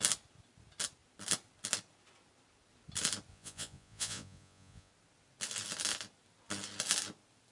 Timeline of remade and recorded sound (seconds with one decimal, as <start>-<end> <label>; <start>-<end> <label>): 0.0-3.3 recorded; 3.3-4.9 remade; 4.9-7.5 recorded